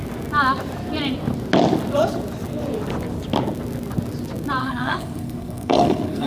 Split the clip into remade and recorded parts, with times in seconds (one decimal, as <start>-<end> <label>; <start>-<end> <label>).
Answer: 0.0-4.6 recorded; 4.6-6.3 remade